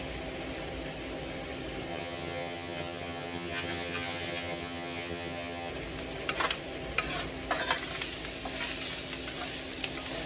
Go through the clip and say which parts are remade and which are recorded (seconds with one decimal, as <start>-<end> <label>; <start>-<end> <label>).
0.0-1.9 recorded; 1.9-5.7 remade; 5.7-10.3 recorded